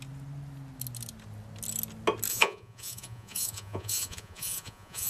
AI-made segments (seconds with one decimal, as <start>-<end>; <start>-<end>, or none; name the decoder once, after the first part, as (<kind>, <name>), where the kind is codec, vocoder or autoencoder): 2.3-5.1 (vocoder, Vocos)